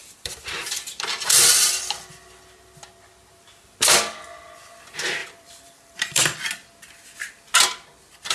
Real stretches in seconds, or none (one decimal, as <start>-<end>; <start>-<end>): 0.6-1.1; 2.1-5.2; 6.5-8.3